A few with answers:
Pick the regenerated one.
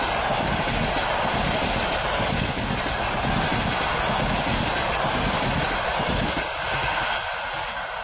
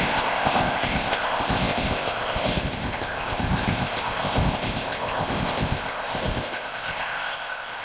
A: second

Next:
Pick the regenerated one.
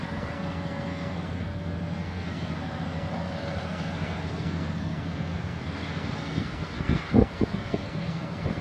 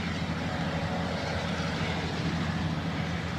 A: first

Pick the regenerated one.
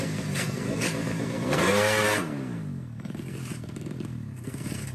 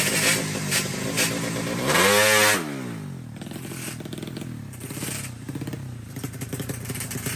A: first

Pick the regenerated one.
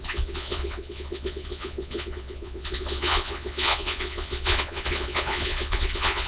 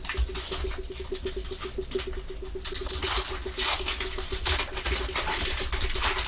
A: first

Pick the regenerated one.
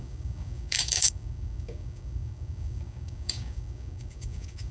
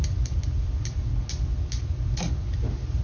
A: first